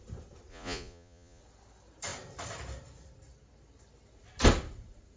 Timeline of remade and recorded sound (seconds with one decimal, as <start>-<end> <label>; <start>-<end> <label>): 0.0-0.5 recorded; 0.5-1.4 remade; 1.4-5.2 recorded

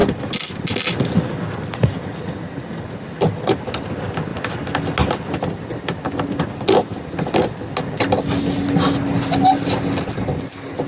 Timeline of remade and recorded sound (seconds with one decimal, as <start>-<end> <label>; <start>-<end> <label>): 0.0-10.9 recorded

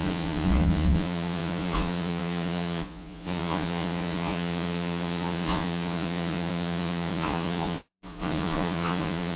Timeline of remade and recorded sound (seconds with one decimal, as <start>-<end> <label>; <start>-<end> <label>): 0.0-9.4 remade

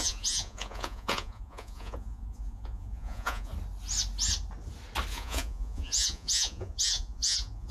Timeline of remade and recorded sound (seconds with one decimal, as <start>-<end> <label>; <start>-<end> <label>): 0.0-3.5 remade; 3.5-5.1 recorded; 5.1-7.7 remade